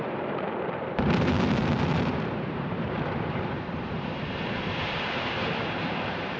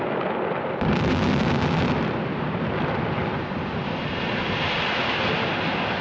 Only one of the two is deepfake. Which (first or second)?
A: first